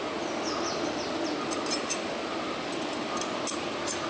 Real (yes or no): yes